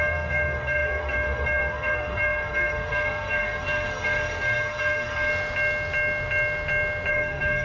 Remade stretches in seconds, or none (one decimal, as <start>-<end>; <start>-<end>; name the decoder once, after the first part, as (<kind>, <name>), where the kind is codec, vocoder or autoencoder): 0.0-5.3 (codec, SNAC); 7.1-7.6